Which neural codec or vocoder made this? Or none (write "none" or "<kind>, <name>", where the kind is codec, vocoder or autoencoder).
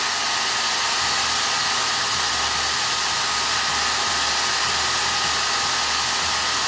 none